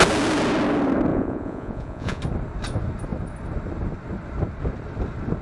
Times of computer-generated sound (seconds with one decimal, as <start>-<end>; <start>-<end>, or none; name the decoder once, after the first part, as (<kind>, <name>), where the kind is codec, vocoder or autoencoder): 1.1-2.2 (vocoder, Vocos)